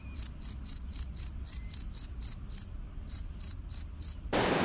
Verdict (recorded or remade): recorded